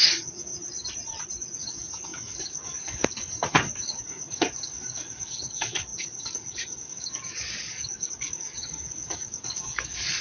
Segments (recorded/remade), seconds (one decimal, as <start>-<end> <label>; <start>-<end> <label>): 0.0-0.5 remade; 0.5-1.6 recorded; 1.6-10.2 remade